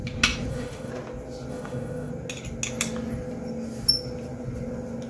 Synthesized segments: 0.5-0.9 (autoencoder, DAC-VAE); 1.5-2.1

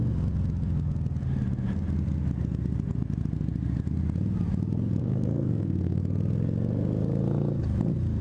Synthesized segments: 5.0-6.0 (codec, SNAC)

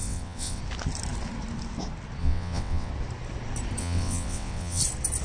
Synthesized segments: 0.0-0.6 (vocoder, WaveNeXt); 2.2-2.9; 3.8-4.8

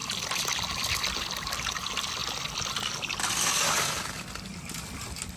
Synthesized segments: none

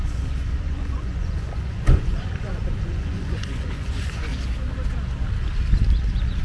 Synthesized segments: 0.0-4.3 (vocoder, Vocos)

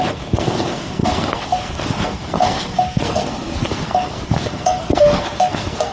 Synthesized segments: 0.0-5.9 (codec, SNAC)

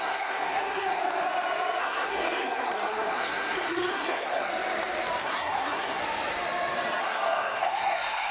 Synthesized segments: 0.0-1.0 (codec, SNAC); 1.8-4.5; 5.2-6.0; 7.0-8.3

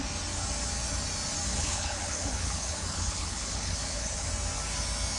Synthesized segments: 1.5-4.3 (codec, HILCodec)